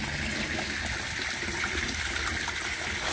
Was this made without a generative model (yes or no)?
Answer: yes